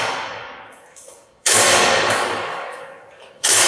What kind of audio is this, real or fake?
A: fake